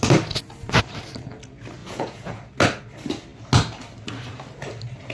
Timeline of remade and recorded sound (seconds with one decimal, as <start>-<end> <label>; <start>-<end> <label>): 0.0-1.8 recorded; 1.8-2.4 remade; 2.4-5.1 recorded

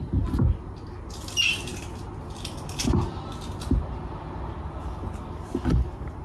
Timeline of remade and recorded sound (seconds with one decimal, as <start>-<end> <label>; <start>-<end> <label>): 0.0-6.2 recorded